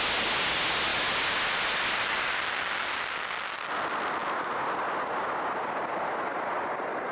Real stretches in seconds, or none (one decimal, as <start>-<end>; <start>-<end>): 0.0-7.1